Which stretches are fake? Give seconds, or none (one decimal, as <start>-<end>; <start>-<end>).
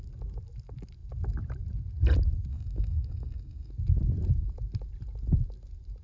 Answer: 2.5-3.7